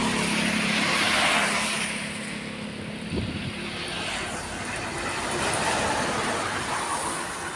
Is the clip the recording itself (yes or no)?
yes